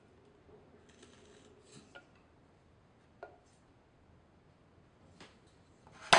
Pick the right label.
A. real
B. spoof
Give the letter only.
A